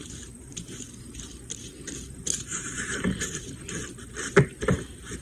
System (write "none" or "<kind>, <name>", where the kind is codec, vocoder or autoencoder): vocoder, BigVGAN v2